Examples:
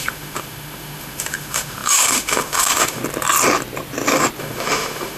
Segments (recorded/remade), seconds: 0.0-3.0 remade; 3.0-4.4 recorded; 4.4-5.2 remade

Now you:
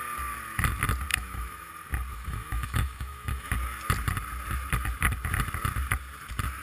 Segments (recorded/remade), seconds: 0.0-1.1 recorded; 1.1-1.7 remade; 1.7-2.1 recorded; 2.1-3.5 remade; 3.5-6.6 recorded

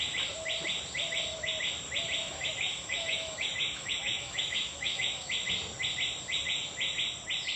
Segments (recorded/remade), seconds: 0.0-2.2 recorded; 2.2-5.3 remade; 5.3-7.6 recorded

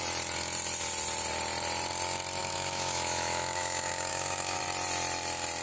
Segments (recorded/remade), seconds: 0.0-2.4 recorded; 2.4-4.6 remade; 4.6-5.6 recorded

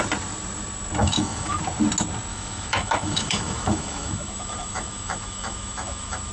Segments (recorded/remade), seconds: 0.0-1.0 recorded; 1.0-1.6 remade; 1.6-2.3 recorded; 2.3-6.3 remade

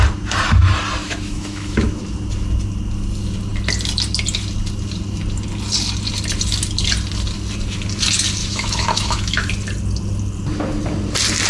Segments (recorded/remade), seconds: 0.0-1.0 recorded; 1.0-2.0 remade; 2.0-8.4 recorded; 8.4-9.5 remade; 9.5-11.5 recorded